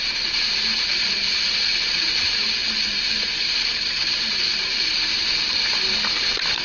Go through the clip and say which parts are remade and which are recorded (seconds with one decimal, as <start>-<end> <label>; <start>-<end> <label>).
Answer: 0.0-6.6 recorded